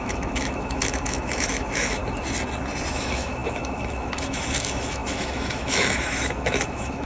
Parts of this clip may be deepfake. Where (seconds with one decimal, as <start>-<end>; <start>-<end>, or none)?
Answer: 0.0-2.0; 2.9-7.1

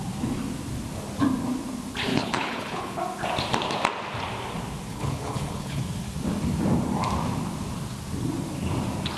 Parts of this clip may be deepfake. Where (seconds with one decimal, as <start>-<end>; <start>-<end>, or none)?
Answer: 2.1-3.0; 4.9-5.8

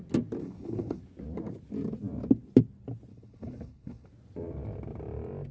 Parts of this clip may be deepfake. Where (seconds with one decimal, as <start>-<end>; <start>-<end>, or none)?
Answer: 0.4-1.0; 3.1-4.1

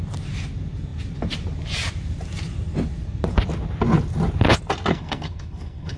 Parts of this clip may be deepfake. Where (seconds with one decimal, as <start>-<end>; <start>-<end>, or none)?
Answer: 4.9-6.0

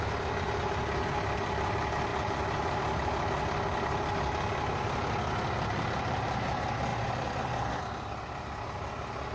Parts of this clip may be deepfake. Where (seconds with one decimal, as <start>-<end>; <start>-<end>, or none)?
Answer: 2.1-2.8; 6.9-7.7

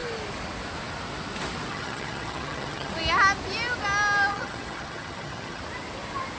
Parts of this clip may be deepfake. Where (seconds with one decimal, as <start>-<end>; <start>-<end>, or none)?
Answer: 1.7-2.9; 4.3-5.6

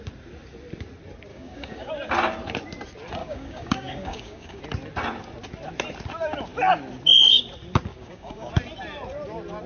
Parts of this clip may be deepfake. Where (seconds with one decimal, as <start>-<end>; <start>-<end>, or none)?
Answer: 1.3-1.9; 3.2-4.6; 7.9-8.5